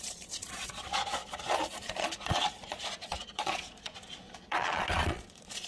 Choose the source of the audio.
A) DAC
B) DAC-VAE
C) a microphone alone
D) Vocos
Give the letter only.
D